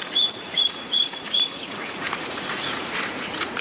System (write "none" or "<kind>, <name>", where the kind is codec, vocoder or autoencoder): vocoder, Vocos